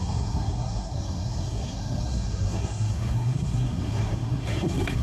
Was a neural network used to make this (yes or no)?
yes